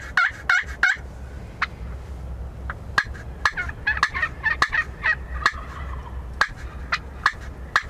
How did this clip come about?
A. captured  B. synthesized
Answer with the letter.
A